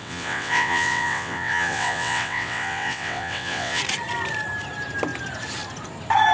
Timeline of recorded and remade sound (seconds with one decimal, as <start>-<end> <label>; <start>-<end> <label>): 0.0-3.8 remade; 3.8-6.3 recorded

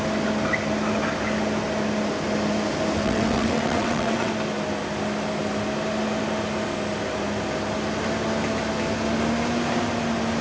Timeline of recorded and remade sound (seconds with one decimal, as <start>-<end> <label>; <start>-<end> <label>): 0.0-3.0 recorded; 3.0-4.3 remade; 4.3-10.4 recorded

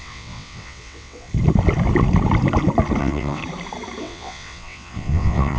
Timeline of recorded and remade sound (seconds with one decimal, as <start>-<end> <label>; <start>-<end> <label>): 0.0-1.3 remade; 1.3-3.0 recorded; 3.0-3.4 remade; 3.4-4.0 recorded; 4.0-5.6 remade

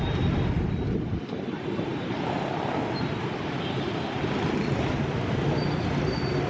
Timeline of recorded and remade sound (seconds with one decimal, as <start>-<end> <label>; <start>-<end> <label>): 0.0-6.5 recorded

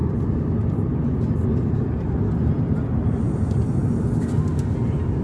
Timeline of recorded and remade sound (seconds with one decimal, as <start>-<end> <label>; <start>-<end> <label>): 0.0-5.2 recorded